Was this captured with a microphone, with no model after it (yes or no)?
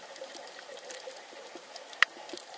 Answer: yes